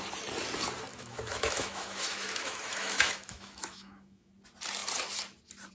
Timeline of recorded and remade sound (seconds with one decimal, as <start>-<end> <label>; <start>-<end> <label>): 0.0-0.9 recorded; 0.9-4.3 remade; 4.3-5.7 recorded